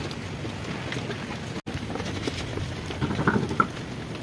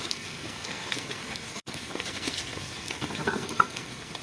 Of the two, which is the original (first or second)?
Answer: first